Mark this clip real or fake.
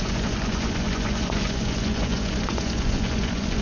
fake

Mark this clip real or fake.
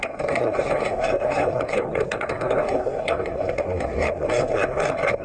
fake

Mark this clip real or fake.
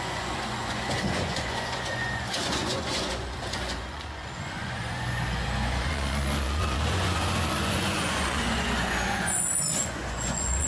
fake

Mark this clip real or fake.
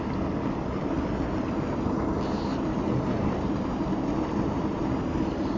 real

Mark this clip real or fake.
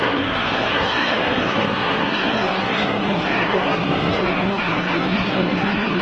fake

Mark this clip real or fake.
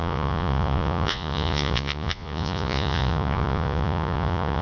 fake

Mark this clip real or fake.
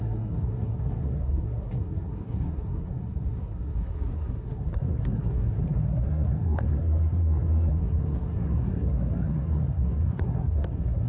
fake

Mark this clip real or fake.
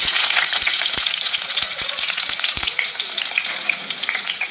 fake